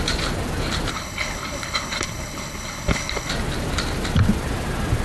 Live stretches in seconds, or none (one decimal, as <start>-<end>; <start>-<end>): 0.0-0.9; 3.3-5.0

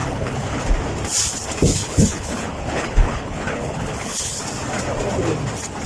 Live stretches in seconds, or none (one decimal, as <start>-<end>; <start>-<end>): 0.6-1.7; 4.4-5.9

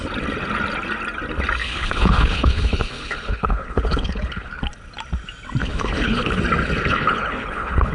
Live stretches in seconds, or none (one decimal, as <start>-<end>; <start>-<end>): 0.0-1.6; 4.6-5.6; 6.4-6.9

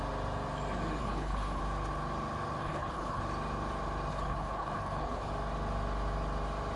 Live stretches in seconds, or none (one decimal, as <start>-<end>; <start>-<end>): 0.0-1.0; 1.6-2.6; 3.2-4.1; 5.3-6.8

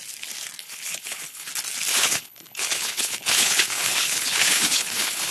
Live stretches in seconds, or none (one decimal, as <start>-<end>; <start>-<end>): 0.0-0.6; 1.5-1.9

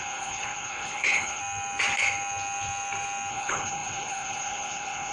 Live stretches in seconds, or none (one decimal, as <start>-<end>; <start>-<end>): 1.4-3.3

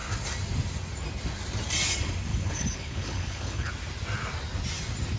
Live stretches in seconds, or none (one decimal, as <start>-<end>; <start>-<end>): 0.0-2.3; 3.7-5.2